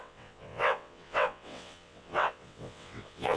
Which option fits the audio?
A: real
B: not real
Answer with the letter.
B